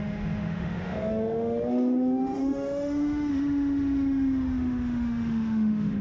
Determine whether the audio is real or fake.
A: fake